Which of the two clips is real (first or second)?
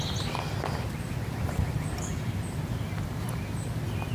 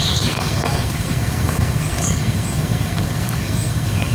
first